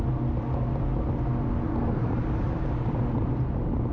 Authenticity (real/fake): real